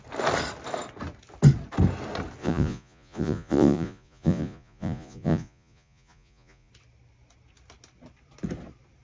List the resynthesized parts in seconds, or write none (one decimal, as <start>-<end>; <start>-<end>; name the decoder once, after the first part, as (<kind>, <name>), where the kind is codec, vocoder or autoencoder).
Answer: 2.4-6.7 (vocoder, Vocos)